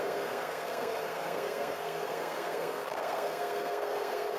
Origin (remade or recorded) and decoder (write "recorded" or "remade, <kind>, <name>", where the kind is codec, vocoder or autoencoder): remade, codec, SNAC